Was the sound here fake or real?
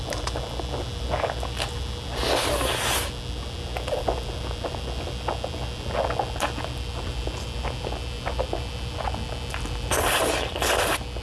real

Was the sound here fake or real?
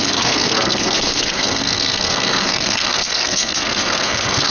fake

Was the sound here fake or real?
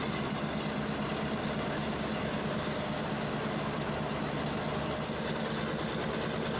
real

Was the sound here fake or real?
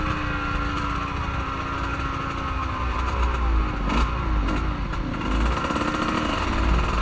real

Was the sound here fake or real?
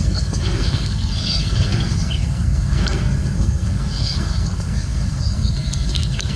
fake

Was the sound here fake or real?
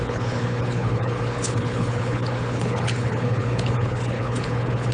fake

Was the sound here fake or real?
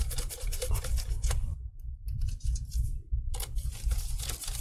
fake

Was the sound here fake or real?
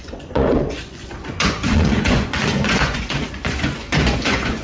fake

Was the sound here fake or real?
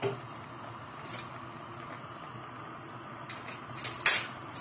real